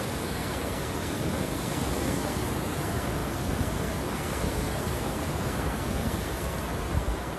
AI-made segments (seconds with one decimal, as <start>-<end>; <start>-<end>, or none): 0.0-7.4